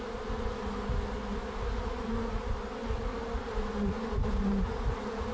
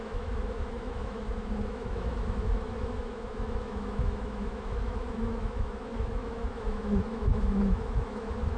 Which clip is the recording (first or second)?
first